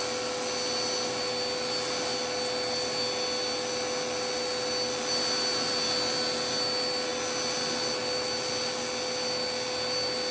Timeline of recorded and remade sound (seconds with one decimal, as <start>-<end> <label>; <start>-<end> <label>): 0.0-10.3 recorded